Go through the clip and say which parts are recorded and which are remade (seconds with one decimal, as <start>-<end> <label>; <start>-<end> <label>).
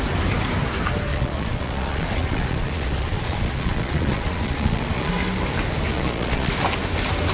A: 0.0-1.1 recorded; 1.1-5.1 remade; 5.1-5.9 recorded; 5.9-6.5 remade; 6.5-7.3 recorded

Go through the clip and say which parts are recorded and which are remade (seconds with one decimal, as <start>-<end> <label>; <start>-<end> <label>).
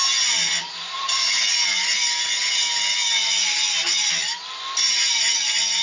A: 0.0-0.4 recorded; 0.4-1.3 remade; 1.3-5.8 recorded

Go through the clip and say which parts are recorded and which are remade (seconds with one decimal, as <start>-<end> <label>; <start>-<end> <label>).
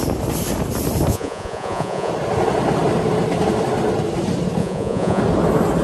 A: 0.0-1.1 recorded; 1.1-2.1 remade; 2.1-4.6 recorded; 4.6-5.2 remade; 5.2-5.8 recorded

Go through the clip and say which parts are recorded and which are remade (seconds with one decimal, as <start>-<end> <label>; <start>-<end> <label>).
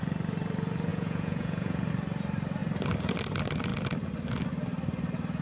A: 0.0-0.9 recorded; 0.9-1.9 remade; 1.9-5.4 recorded